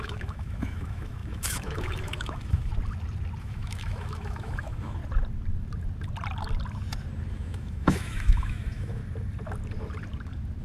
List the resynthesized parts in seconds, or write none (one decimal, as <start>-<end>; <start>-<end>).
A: 0.0-2.7; 3.4-5.0; 7.3-9.0